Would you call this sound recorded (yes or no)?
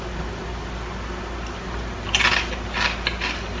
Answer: yes